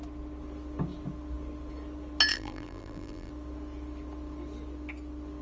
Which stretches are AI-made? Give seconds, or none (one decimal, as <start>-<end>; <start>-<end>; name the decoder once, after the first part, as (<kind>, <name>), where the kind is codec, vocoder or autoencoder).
2.3-3.3 (vocoder, BigVGAN v2)